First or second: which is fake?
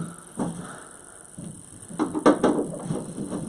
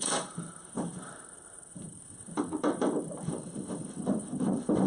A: second